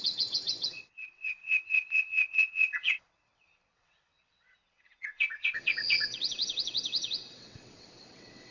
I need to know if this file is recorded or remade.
remade